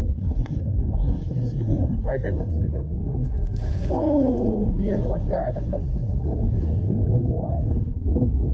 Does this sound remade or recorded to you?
remade